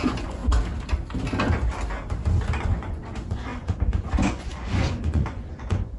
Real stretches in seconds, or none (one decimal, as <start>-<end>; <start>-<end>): 0.4-2.6